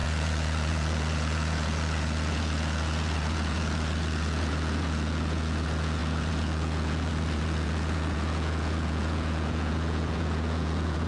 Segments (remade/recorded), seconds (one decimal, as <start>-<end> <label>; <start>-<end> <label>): 0.0-11.1 remade

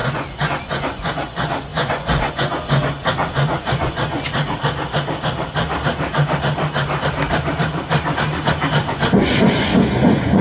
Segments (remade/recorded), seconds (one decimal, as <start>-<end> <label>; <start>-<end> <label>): 0.0-4.3 remade; 4.3-8.9 recorded; 8.9-10.4 remade